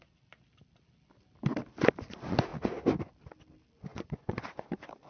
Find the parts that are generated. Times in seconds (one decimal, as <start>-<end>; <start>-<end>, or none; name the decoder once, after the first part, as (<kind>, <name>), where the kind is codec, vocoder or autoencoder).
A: 3.9-4.4 (vocoder, Vocos)